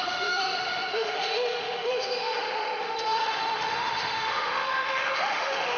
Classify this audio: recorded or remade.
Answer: remade